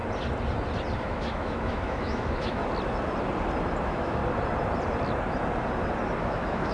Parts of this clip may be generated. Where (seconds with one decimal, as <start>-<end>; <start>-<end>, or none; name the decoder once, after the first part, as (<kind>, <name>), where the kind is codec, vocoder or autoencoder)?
1.0-2.6 (autoencoder, DAC-VAE); 3.8-4.2; 6.2-6.7